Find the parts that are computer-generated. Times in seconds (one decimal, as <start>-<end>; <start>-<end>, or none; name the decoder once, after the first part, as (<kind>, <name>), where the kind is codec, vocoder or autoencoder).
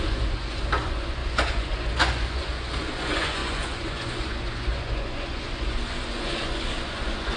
0.0-7.4 (vocoder, Vocos)